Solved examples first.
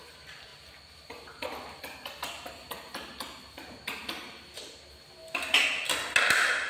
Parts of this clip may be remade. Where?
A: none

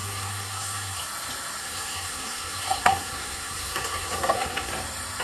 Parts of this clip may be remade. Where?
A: 0.0-1.0 (codec, SNAC); 1.6-4.7

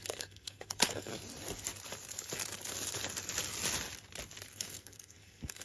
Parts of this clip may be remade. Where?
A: 0.0-1.1 (codec, SNAC); 4.5-5.6